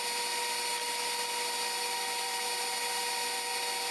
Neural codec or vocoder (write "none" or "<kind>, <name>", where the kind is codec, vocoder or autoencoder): none